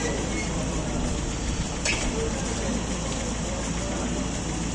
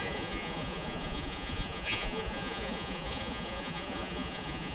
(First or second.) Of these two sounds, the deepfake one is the second